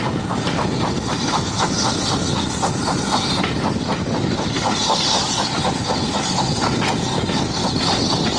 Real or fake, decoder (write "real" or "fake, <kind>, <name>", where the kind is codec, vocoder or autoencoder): real